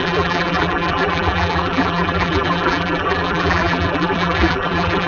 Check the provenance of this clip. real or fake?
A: fake